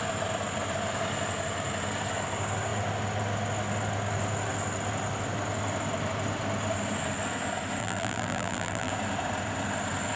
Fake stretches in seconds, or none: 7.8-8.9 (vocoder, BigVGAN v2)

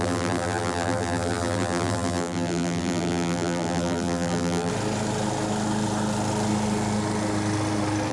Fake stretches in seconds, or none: 0.0-4.7 (vocoder, BigVGAN v2)

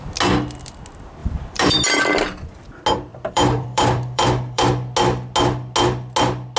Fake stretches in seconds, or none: 1.2-2.0 (vocoder, BigVGAN v2); 3.1-4.7

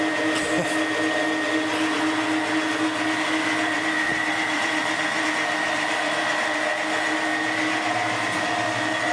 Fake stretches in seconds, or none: 4.1-4.8 (vocoder, BigVGAN v2)

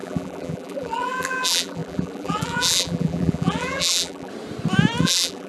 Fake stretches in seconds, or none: 0.0-4.3 (vocoder, BigVGAN v2); 5.0-5.5

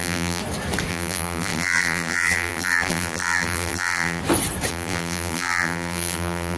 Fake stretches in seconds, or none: 0.0-0.4 (vocoder, BigVGAN v2); 0.9-4.2; 4.7-6.6

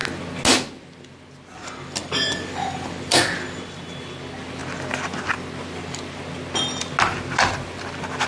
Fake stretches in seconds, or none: 2.0-3.1 (vocoder, BigVGAN v2)

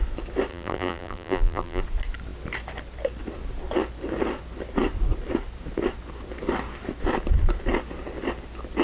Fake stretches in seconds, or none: 0.5-1.8 (vocoder, BigVGAN v2)